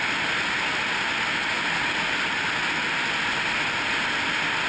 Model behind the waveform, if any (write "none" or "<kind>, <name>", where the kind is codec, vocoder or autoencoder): none